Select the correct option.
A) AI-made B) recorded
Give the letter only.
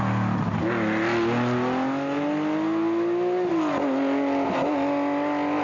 B